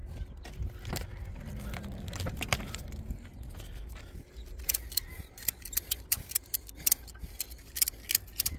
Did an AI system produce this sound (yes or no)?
no